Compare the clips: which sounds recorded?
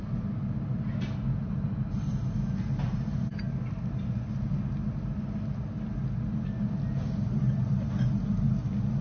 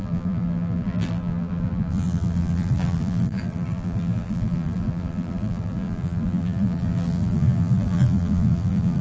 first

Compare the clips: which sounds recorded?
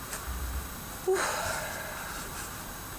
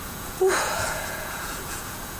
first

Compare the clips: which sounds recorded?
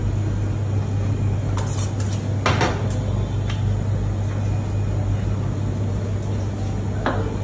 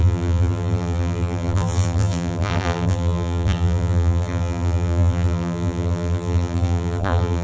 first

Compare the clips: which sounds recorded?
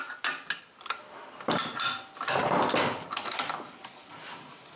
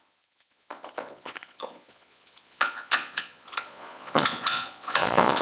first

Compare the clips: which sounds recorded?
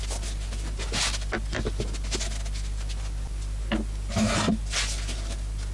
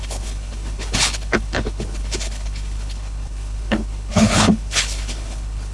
first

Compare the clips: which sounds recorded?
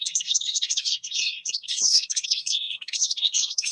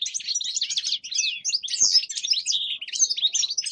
second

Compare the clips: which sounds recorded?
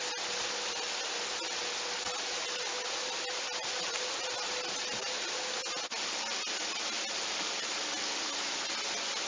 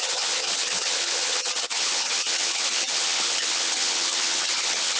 first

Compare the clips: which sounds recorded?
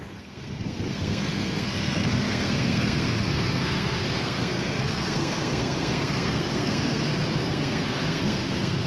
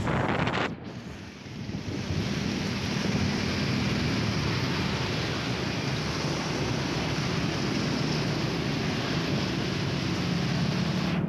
second